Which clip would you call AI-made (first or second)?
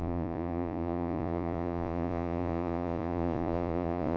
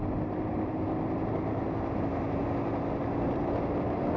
first